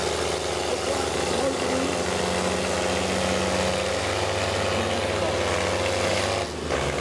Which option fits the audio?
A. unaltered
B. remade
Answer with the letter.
A